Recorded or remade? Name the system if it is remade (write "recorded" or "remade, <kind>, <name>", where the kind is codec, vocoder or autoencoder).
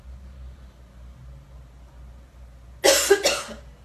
recorded